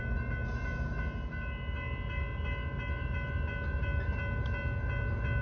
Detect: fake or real real